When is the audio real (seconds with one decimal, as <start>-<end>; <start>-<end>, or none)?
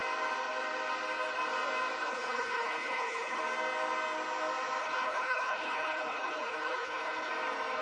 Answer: 0.0-2.0; 3.4-4.8; 7.3-7.8